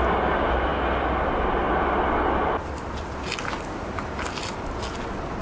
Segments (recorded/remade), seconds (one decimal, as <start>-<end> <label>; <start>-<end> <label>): 0.0-5.4 recorded